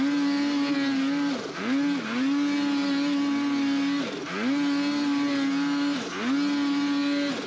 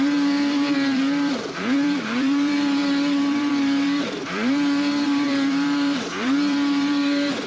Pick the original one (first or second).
first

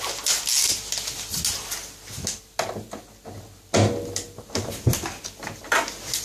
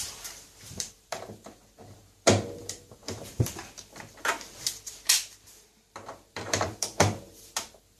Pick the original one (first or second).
first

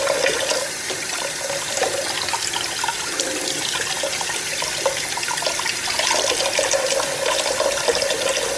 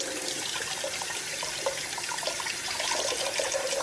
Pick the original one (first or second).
first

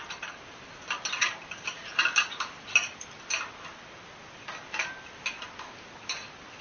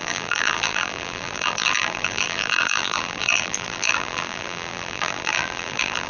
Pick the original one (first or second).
first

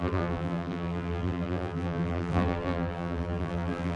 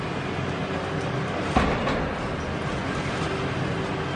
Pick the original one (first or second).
second